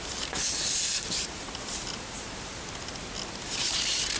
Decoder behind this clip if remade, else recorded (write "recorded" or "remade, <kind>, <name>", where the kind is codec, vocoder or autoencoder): recorded